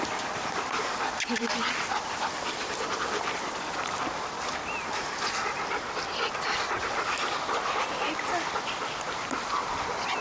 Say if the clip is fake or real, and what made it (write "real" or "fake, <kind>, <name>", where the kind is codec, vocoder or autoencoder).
fake, vocoder, BigVGAN v2